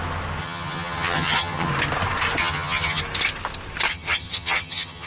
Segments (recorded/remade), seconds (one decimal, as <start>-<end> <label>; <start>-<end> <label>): 0.0-0.4 recorded; 0.4-1.7 remade; 1.7-2.4 recorded; 2.4-3.0 remade; 3.0-3.9 recorded; 3.9-5.1 remade